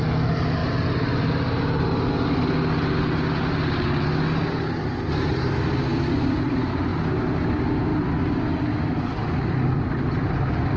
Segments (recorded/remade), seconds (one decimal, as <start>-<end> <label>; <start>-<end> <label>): 0.0-10.8 recorded